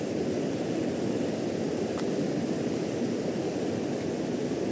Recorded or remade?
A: recorded